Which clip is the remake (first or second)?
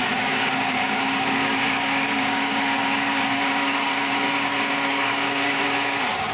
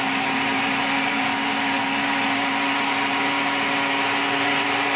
first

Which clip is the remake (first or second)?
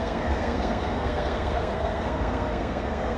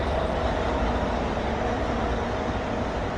first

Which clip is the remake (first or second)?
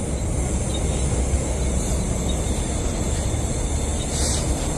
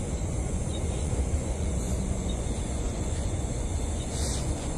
second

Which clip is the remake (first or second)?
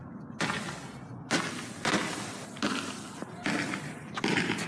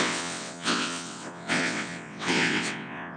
second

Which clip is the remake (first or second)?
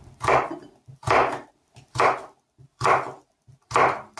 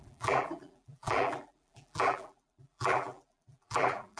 second